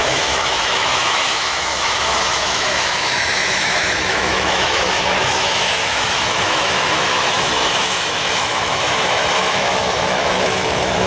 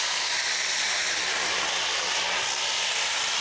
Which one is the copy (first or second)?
first